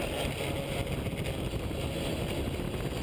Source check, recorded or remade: recorded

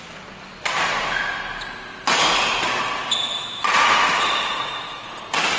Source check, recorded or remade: recorded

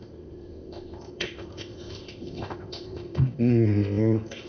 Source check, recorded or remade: remade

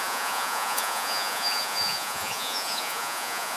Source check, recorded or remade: remade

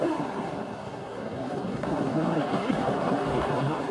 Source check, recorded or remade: remade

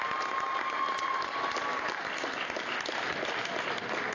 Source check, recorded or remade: recorded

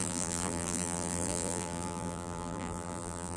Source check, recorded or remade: remade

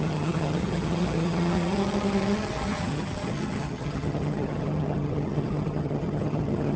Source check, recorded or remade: remade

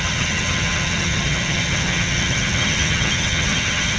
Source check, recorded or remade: remade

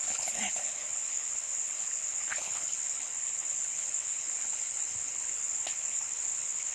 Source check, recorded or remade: remade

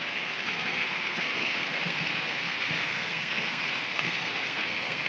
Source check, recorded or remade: remade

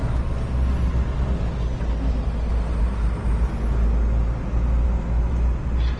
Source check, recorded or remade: recorded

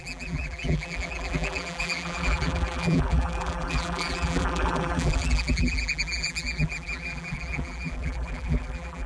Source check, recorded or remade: remade